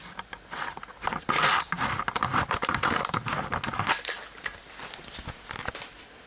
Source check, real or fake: real